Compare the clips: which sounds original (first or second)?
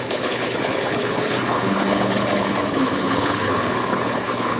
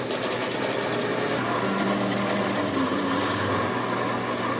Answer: second